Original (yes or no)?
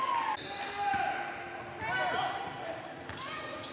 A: yes